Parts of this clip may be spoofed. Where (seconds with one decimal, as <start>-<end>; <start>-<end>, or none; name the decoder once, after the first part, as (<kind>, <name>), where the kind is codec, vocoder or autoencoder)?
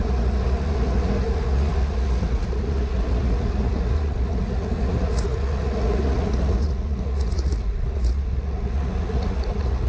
0.0-9.9 (vocoder, Vocos)